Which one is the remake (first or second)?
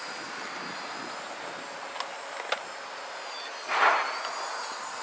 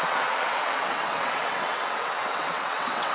second